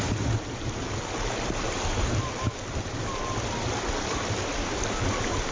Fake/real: real